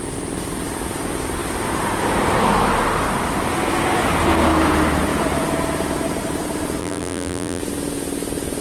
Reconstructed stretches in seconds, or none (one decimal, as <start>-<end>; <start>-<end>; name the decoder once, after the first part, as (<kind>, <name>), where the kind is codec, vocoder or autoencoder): 6.8-7.6 (vocoder, BigVGAN v2)

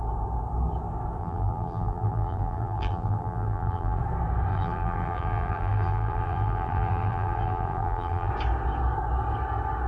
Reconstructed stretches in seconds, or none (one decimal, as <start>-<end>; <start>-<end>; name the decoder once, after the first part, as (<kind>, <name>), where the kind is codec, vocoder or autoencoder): 1.2-4.0 (vocoder, BigVGAN v2); 4.5-8.3

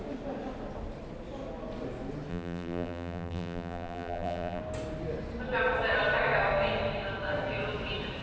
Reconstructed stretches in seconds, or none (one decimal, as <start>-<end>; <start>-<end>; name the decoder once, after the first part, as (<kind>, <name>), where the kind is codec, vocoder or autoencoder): 2.3-4.6 (vocoder, BigVGAN v2)

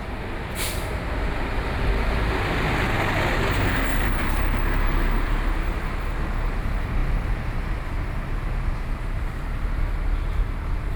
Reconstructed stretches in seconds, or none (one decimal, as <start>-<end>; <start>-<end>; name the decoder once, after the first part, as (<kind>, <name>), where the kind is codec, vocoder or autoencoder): 0.0-1.0 (vocoder, BigVGAN v2); 3.9-4.4

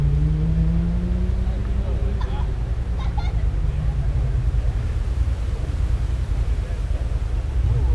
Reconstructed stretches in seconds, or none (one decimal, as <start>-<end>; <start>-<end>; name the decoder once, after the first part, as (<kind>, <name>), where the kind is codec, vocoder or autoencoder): 1.6-6.3 (vocoder, BigVGAN v2)

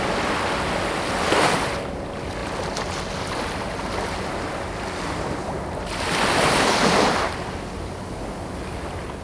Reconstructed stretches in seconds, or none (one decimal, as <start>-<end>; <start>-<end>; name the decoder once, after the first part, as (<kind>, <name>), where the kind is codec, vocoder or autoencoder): none

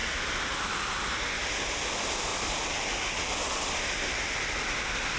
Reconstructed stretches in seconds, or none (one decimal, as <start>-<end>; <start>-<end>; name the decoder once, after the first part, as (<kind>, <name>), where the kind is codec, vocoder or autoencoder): 0.0-1.8 (vocoder, BigVGAN v2); 2.3-2.9